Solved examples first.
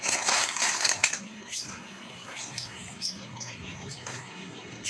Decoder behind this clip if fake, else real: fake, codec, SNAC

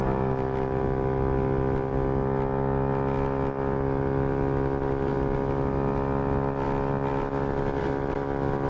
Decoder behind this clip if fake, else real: real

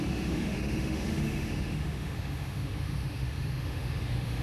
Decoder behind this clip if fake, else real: fake, autoencoder, DAC-VAE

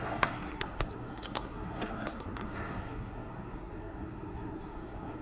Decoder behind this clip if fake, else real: fake, codec, SNAC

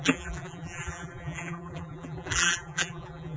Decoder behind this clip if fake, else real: fake, vocoder, BigVGAN v2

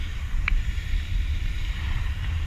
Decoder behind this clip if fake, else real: fake, vocoder, BigVGAN v2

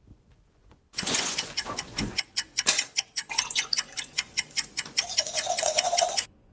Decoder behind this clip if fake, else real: fake, vocoder, Vocos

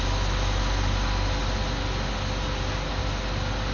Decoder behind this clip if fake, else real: real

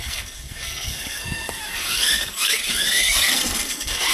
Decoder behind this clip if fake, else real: fake, codec, SNAC